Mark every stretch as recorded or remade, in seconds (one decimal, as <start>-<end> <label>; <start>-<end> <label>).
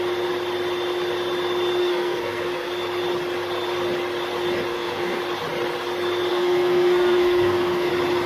0.0-1.8 recorded; 1.8-2.7 remade; 2.7-4.7 recorded; 4.7-5.2 remade; 5.2-6.3 recorded; 6.3-7.9 remade; 7.9-8.3 recorded